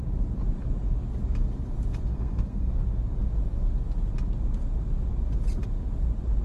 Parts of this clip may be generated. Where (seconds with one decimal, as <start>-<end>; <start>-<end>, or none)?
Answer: 2.1-2.7